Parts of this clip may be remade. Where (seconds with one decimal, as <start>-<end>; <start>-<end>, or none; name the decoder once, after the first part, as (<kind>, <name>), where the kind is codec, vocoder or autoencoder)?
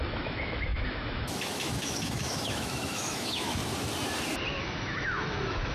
0.0-3.6 (autoencoder, DAC-VAE); 4.6-5.7